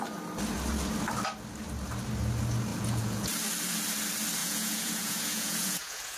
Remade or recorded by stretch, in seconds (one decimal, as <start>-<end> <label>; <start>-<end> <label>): 0.0-2.7 recorded; 2.7-3.3 remade; 3.3-4.4 recorded; 4.4-6.2 remade